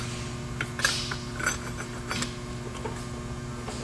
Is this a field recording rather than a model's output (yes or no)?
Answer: yes